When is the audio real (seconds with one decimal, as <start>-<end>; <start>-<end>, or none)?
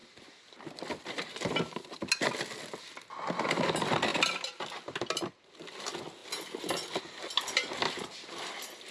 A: 0.0-8.9